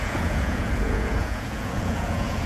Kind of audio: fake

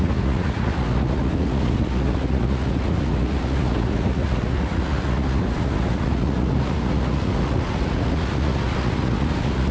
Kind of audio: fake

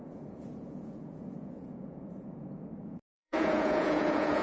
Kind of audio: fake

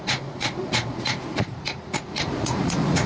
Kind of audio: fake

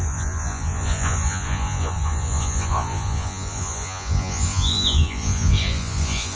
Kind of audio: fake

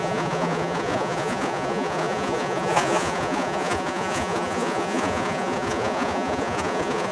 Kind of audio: fake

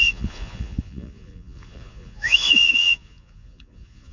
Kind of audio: fake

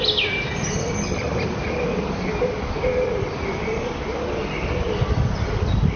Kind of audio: real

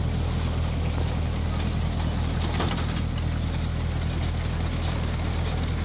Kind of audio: real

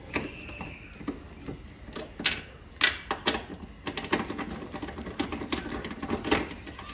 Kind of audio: real